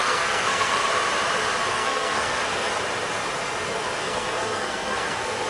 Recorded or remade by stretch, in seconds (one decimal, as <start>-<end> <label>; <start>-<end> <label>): 0.0-0.8 remade; 0.8-1.7 recorded; 1.7-2.7 remade; 2.7-4.0 recorded; 4.0-5.5 remade